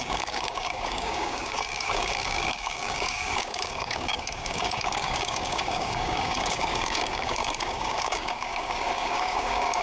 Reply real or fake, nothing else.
fake